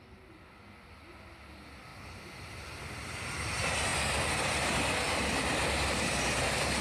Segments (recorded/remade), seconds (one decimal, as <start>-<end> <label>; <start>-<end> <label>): 0.0-6.8 recorded